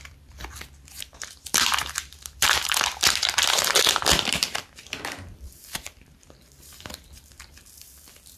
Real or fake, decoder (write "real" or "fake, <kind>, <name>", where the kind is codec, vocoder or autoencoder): fake, vocoder, BigVGAN v2